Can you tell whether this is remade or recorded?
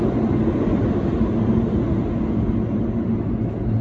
recorded